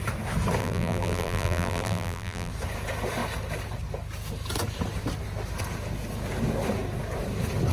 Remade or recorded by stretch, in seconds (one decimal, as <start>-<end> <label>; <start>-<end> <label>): 0.0-0.6 recorded; 0.6-2.5 remade; 2.5-7.7 recorded